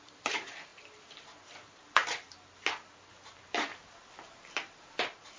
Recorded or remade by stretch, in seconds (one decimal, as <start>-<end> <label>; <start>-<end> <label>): 0.0-3.7 remade; 3.7-5.0 recorded; 5.0-5.4 remade